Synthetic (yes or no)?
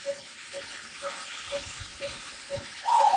yes